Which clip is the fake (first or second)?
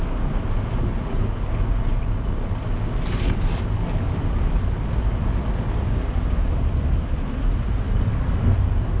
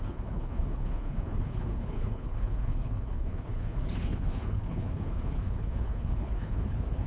second